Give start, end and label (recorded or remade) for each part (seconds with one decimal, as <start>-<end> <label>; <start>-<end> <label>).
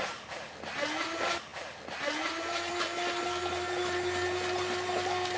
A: 0.0-5.4 recorded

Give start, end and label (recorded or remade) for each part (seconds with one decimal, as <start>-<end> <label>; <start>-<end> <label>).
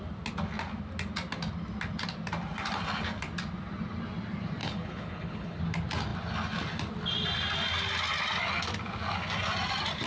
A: 0.0-4.6 recorded; 4.6-5.6 remade; 5.6-10.1 recorded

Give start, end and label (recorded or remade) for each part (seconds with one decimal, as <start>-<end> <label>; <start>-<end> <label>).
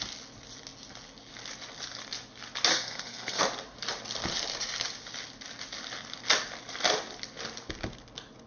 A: 0.0-2.7 recorded; 2.7-3.4 remade; 3.4-8.5 recorded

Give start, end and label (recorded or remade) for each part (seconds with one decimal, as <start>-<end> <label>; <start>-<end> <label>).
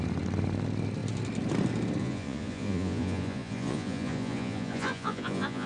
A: 0.0-2.0 recorded; 2.0-5.7 remade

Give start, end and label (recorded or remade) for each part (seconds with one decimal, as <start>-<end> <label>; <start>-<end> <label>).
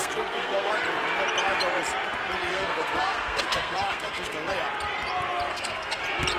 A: 0.0-0.7 remade; 0.7-2.5 recorded; 2.5-4.5 remade; 4.5-5.5 recorded; 5.5-6.0 remade; 6.0-6.4 recorded